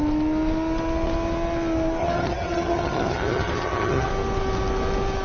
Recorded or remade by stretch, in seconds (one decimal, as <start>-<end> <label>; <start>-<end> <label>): 0.0-2.0 recorded; 2.0-4.1 remade; 4.1-5.2 recorded